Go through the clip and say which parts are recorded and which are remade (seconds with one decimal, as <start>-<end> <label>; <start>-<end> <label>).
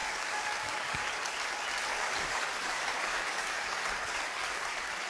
0.0-1.4 remade; 1.4-1.9 recorded; 1.9-5.1 remade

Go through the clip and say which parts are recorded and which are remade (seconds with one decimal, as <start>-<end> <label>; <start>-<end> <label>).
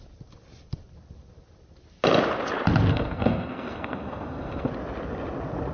0.0-2.9 recorded; 2.9-4.7 remade; 4.7-5.7 recorded